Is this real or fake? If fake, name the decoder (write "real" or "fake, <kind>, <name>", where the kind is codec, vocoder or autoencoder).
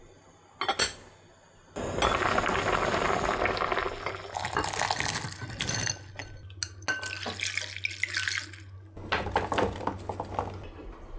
real